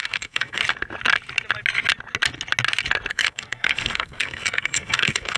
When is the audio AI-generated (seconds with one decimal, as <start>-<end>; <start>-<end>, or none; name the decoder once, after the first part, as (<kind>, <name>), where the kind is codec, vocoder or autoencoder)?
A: 0.0-0.6 (codec, SNAC); 3.1-5.4